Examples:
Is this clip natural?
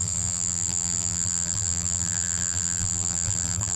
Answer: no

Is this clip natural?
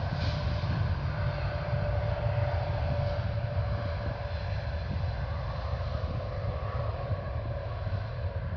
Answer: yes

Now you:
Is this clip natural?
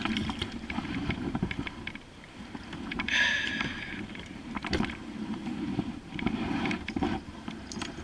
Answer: no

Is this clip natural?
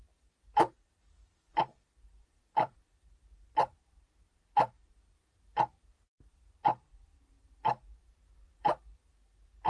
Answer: no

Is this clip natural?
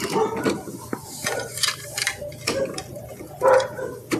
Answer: no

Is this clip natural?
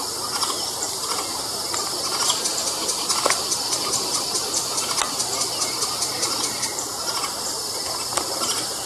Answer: yes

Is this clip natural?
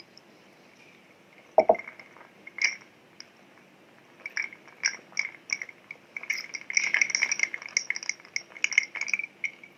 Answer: yes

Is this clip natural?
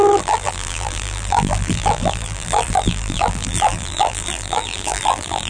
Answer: no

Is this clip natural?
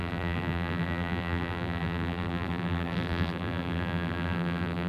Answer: no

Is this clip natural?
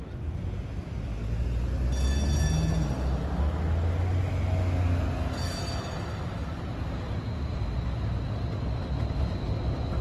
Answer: yes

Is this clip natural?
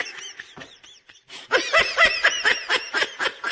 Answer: no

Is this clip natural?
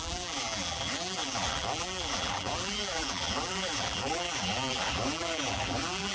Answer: no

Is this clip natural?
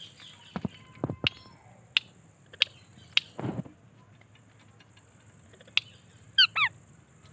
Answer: yes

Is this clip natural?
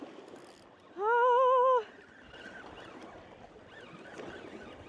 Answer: yes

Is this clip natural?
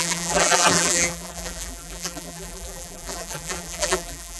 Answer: no